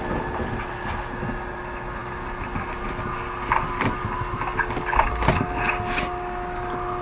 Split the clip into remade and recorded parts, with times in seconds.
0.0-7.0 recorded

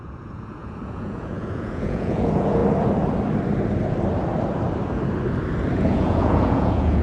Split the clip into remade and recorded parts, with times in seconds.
0.0-2.6 remade; 2.6-5.9 recorded; 5.9-7.0 remade

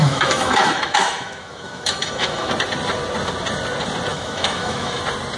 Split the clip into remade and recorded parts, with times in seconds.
0.0-2.5 remade; 2.5-4.1 recorded; 4.1-5.0 remade; 5.0-5.4 recorded